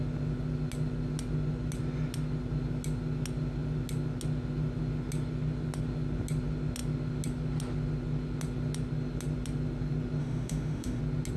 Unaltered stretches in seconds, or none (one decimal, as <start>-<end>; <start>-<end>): 0.0-10.2; 11.0-11.4